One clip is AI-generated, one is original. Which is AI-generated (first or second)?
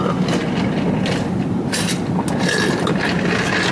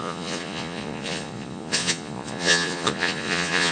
second